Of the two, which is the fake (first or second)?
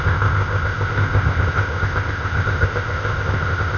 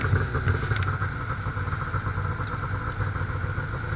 first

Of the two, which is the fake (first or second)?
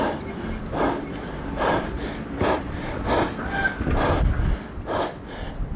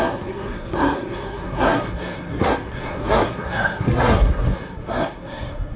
second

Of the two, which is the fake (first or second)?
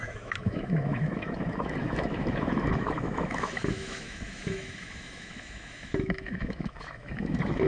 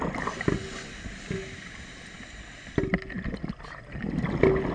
first